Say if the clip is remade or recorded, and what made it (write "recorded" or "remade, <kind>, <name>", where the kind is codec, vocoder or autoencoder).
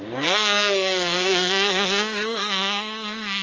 remade, codec, SNAC